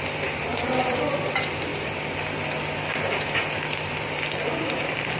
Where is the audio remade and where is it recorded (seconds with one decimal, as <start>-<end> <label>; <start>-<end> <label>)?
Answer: 0.0-5.2 recorded

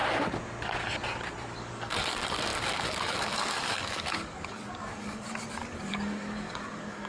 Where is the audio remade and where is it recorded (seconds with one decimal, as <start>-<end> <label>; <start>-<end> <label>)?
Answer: 0.0-1.6 recorded; 1.6-7.1 remade